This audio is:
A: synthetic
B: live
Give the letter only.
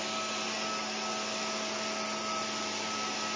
B